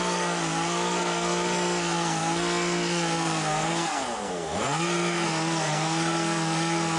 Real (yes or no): no